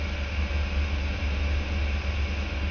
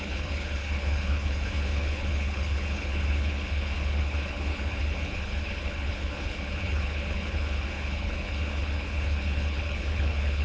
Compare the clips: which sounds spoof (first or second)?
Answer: second